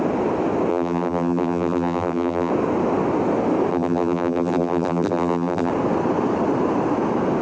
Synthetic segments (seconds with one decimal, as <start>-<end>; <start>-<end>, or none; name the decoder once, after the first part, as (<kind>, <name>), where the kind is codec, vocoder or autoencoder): 0.7-2.5 (vocoder, BigVGAN v2); 3.7-5.7